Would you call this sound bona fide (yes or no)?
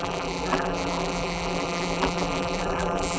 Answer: no